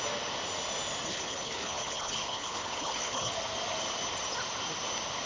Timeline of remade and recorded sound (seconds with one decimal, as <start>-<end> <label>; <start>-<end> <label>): 0.0-1.1 recorded; 1.1-3.3 remade; 3.3-5.3 recorded